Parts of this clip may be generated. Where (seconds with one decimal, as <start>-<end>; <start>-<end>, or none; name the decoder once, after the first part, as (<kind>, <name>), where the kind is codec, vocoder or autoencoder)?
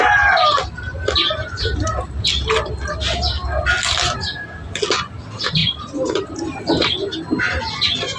1.4-2.3 (vocoder, BigVGAN v2); 5.6-6.6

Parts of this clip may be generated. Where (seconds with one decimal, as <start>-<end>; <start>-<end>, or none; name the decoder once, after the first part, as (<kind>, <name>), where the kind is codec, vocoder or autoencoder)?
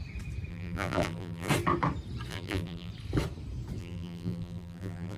0.5-1.5 (vocoder, BigVGAN v2); 2.3-2.9; 3.8-5.2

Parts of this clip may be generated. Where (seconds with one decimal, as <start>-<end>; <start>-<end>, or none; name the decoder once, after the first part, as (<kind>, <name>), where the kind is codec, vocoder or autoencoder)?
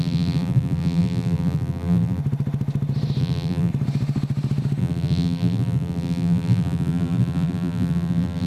0.0-2.2 (vocoder, BigVGAN v2); 3.2-3.7; 4.8-8.5